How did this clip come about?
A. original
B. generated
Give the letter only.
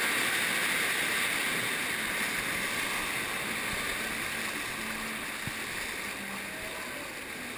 A